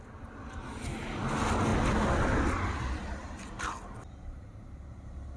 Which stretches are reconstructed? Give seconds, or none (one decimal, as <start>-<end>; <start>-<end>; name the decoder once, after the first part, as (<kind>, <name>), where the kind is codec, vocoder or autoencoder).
none